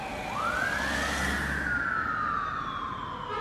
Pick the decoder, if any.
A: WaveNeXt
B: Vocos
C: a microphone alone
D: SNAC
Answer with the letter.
C